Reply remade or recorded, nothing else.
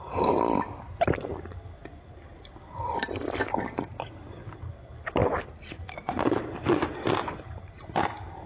recorded